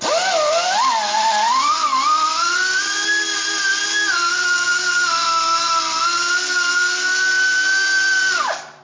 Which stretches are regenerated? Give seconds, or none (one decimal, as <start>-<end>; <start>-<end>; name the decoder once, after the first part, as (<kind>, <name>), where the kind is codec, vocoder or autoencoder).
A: none

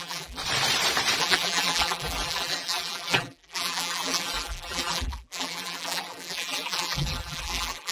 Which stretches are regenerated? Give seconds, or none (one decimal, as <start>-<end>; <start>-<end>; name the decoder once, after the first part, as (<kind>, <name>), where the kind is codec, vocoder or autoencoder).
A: 0.0-0.4 (vocoder, BigVGAN v2); 1.2-7.9

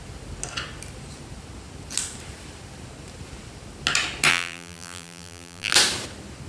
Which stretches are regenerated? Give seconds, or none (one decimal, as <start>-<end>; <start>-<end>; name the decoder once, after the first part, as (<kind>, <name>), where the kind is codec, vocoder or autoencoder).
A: 4.3-5.7 (vocoder, BigVGAN v2)

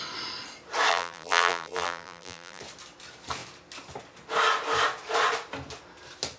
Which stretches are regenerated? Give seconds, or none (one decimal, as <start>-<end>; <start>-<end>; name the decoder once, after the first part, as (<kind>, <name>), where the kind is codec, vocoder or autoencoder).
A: 0.9-2.6 (vocoder, BigVGAN v2)